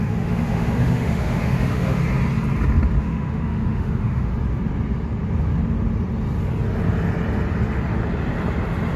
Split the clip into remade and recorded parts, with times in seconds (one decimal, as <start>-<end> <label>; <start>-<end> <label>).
0.0-2.0 remade; 2.0-3.0 recorded; 3.0-4.3 remade; 4.3-9.0 recorded

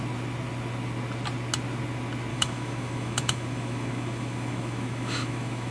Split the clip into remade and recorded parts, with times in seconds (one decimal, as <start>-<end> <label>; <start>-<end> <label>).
0.0-2.3 recorded; 2.3-5.7 remade

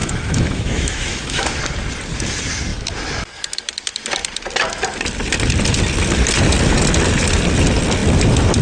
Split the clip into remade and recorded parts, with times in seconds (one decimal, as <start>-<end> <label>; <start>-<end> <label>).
0.0-1.6 remade; 1.6-8.6 recorded

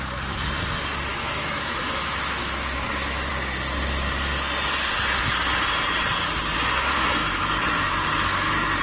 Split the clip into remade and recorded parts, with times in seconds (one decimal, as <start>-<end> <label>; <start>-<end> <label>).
0.0-1.1 recorded; 1.1-3.3 remade; 3.3-7.2 recorded; 7.2-8.8 remade

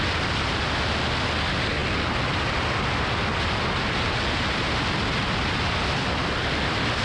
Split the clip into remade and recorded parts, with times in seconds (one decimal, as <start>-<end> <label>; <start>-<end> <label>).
0.0-7.0 recorded

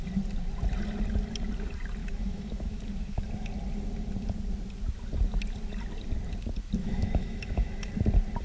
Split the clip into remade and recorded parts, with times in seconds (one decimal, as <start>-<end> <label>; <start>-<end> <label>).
0.0-2.0 recorded; 2.0-2.8 remade; 2.8-6.8 recorded; 6.8-7.9 remade; 7.9-8.4 recorded

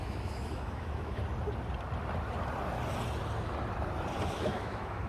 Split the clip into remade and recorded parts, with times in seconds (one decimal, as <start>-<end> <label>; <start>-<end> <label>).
0.0-1.2 remade; 1.2-4.3 recorded; 4.3-5.1 remade